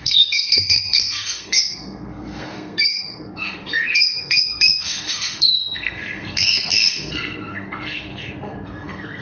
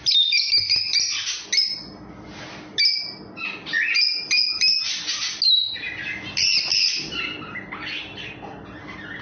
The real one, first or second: second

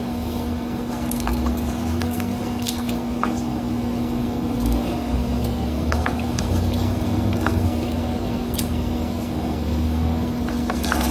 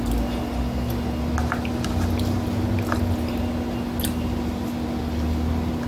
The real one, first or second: second